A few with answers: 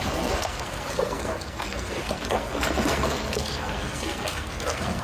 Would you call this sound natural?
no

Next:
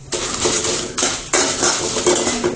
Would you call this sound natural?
no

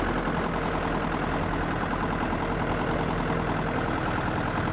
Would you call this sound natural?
yes